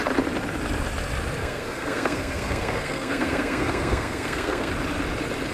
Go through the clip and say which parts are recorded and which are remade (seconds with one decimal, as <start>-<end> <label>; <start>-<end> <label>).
0.0-1.4 recorded; 1.4-4.7 remade; 4.7-5.5 recorded